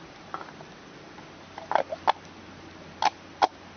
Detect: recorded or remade recorded